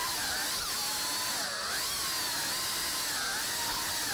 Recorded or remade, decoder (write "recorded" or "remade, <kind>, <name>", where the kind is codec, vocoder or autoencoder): recorded